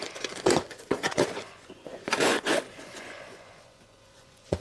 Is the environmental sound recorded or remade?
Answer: remade